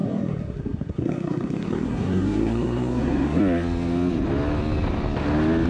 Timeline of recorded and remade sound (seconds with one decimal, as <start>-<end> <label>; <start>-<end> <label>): 0.0-3.4 remade; 3.4-5.7 recorded